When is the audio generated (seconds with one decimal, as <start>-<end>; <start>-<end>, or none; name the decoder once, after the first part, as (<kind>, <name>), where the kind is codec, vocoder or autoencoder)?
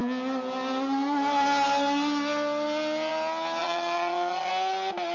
3.6-4.5 (vocoder, Vocos)